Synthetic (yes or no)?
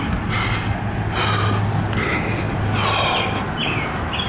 no